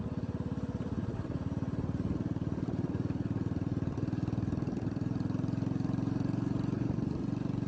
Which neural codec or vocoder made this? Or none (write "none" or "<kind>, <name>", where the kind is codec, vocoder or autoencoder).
none